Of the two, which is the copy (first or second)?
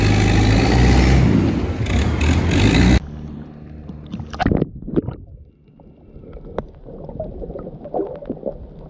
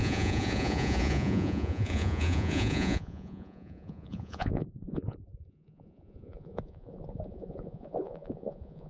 second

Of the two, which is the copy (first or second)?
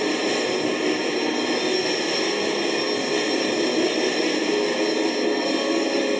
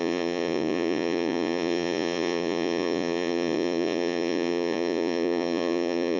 second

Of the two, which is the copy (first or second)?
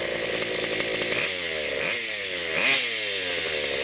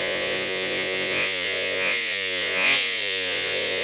second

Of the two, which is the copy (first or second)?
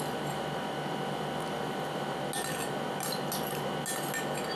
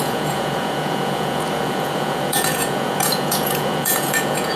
second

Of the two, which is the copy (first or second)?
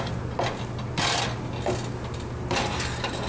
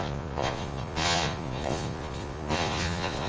second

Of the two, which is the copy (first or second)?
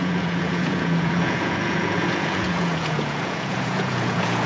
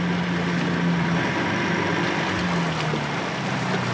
first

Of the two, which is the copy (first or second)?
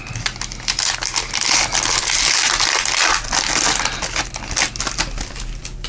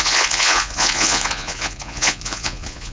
second